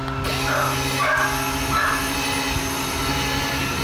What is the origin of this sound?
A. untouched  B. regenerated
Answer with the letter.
A